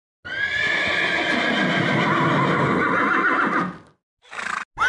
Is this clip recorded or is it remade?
recorded